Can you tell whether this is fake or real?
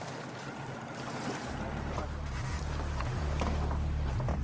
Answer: real